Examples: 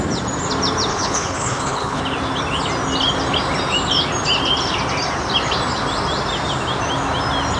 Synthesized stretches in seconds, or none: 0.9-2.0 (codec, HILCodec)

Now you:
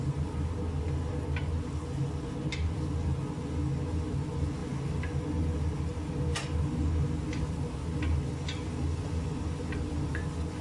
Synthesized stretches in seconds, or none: none

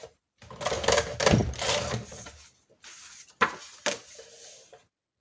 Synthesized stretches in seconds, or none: none

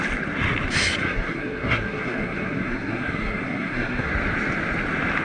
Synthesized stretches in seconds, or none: 1.0-4.1 (codec, SNAC)

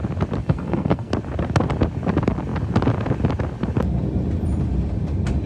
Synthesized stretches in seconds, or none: 0.4-1.1 (codec, SNAC)

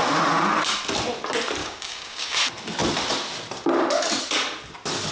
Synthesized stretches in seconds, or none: 1.6-2.4 (codec, DAC)